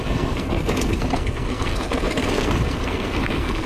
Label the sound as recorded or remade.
remade